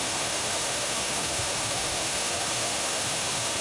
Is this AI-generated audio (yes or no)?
yes